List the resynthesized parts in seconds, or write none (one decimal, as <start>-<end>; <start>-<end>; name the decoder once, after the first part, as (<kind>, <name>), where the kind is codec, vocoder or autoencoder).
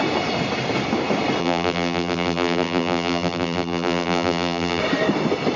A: 1.4-4.8 (vocoder, BigVGAN v2)